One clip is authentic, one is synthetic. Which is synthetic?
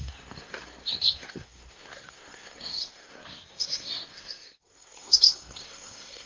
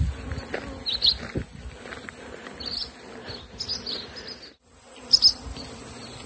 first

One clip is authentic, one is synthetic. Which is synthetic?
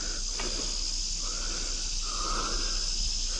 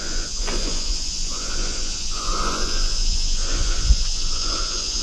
second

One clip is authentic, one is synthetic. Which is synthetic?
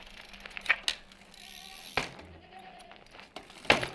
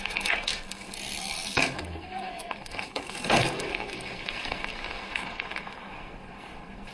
second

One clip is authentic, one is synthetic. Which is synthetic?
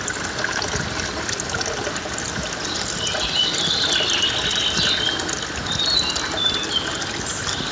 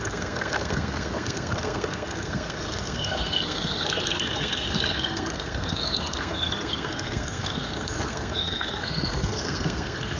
second